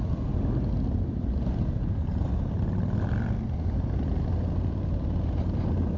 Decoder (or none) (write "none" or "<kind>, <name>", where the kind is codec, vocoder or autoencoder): none